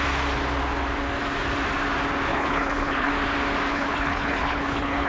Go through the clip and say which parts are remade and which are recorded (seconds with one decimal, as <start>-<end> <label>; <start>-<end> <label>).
0.0-2.3 recorded; 2.3-3.1 remade; 3.1-3.7 recorded; 3.7-5.1 remade